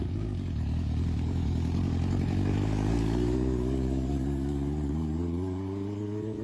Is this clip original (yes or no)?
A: no